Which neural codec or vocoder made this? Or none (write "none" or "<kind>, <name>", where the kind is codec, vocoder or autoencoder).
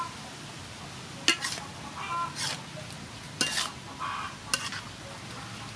none